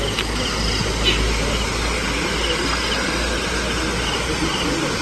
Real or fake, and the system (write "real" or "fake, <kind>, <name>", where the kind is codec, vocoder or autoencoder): real